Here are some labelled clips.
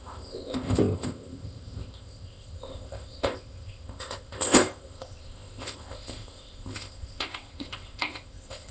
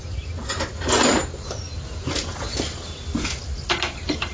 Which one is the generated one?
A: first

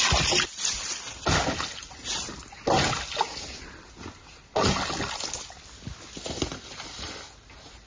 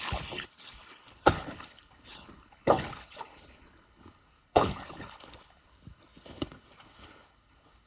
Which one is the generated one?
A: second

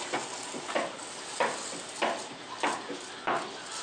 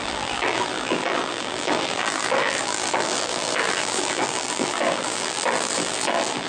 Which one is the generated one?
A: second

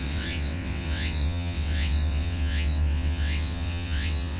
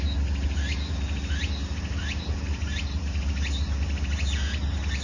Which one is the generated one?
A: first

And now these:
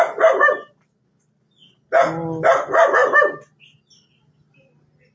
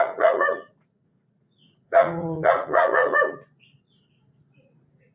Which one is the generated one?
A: second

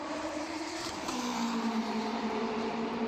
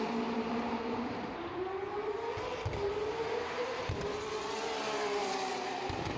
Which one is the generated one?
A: first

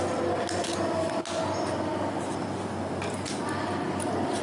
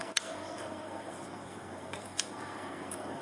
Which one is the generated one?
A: second